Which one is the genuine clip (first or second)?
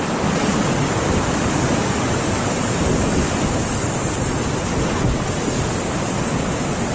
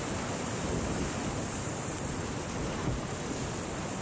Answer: second